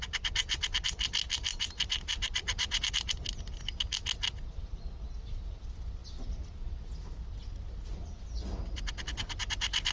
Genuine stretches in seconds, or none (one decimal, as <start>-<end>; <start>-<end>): 0.0-1.5; 2.9-9.9